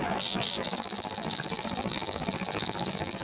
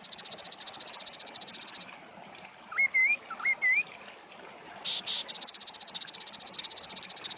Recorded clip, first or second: second